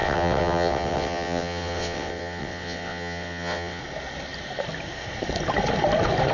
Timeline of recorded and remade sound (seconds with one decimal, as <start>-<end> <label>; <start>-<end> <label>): 0.0-3.8 remade; 3.8-6.3 recorded